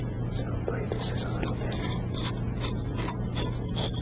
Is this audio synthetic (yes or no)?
no